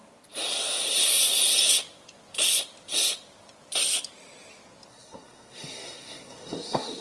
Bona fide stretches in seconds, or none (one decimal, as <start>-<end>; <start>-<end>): 0.0-4.9